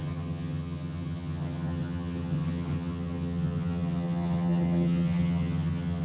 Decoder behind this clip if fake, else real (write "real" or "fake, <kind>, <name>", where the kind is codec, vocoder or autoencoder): fake, vocoder, HiFi-GAN